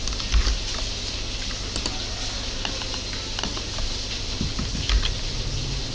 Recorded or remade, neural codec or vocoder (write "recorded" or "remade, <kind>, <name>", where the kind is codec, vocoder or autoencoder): recorded